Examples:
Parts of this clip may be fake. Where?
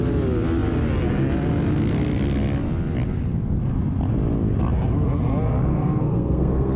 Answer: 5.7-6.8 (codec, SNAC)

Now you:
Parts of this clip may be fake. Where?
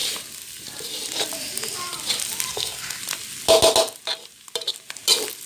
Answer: 2.5-3.0 (codec, SNAC)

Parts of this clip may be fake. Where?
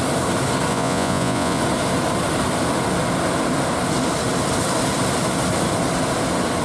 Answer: 0.7-1.6 (vocoder, Vocos)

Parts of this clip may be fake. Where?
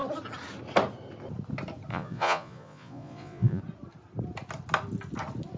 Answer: 1.9-3.6 (vocoder, Vocos)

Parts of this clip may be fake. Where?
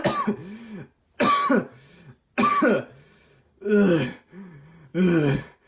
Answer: none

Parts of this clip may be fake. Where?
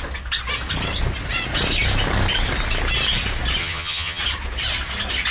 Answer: 3.6-4.2 (vocoder, HiFi-GAN)